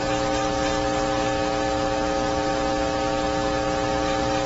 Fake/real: real